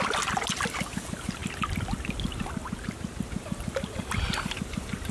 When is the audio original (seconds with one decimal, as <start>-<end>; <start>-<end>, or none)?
0.0-5.1